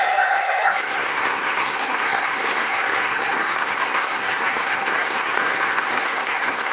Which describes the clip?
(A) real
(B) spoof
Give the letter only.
B